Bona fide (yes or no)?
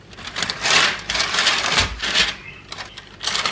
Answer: yes